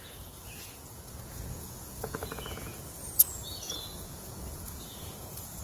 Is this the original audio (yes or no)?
no